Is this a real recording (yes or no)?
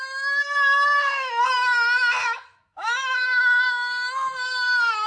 no